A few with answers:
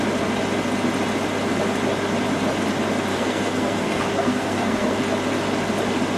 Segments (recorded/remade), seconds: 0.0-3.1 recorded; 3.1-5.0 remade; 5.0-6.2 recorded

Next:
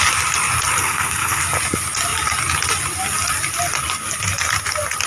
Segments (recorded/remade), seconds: 0.0-0.8 recorded; 0.8-1.4 remade; 1.4-5.1 recorded